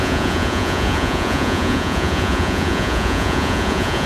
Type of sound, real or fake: fake